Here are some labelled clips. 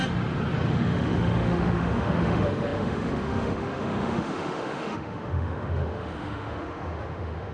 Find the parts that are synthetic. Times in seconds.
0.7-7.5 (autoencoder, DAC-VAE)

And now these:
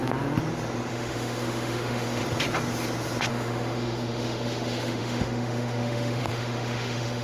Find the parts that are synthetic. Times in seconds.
0.9-2.2 (autoencoder, DAC-VAE); 3.3-7.2